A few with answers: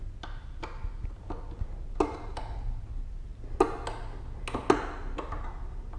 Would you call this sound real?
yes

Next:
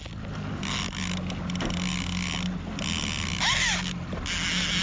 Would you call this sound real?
yes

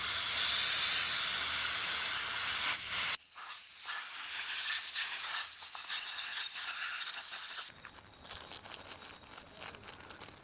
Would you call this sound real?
yes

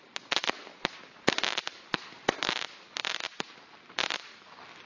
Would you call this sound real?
yes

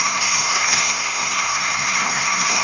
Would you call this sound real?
no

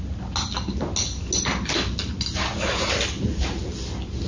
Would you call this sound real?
yes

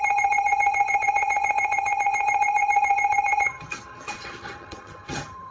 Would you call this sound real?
no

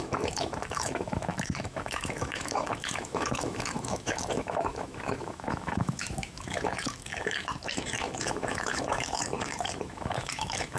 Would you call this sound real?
no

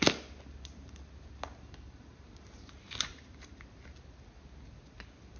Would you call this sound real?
yes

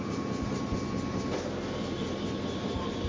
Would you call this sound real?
yes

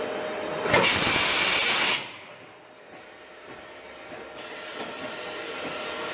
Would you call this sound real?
yes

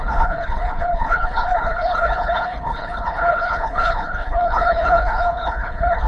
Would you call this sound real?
no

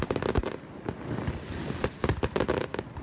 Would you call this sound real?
yes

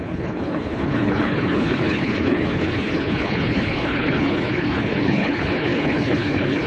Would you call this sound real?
no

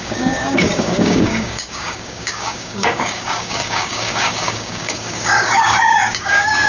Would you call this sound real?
no